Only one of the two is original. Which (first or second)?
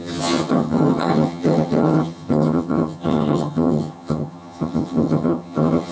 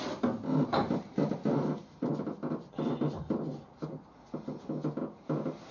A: second